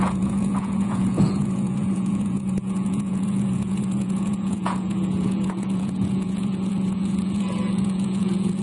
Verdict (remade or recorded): remade